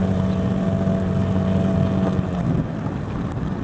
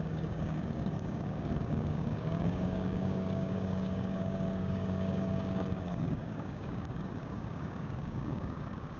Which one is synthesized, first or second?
second